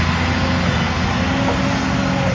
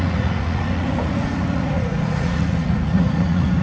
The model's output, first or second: second